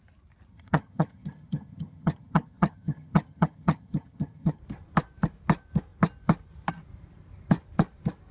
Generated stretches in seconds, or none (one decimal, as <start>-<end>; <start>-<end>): 0.5-4.6